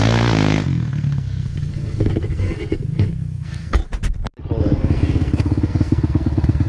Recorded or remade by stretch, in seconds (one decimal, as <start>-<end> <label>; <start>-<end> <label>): 0.0-3.8 remade; 3.8-4.6 recorded; 4.6-6.7 remade